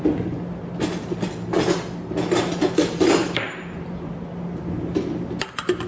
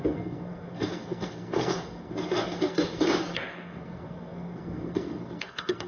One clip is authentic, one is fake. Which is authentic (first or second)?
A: first